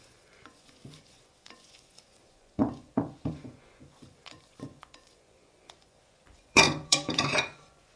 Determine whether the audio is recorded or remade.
remade